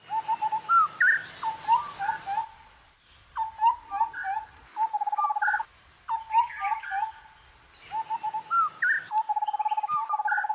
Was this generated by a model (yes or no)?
no